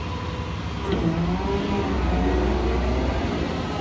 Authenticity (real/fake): real